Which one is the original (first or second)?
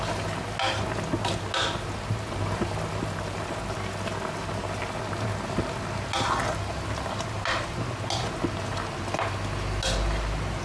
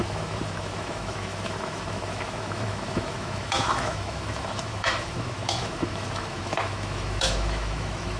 first